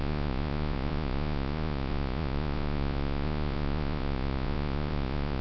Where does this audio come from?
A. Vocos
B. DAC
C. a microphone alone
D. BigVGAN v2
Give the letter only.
A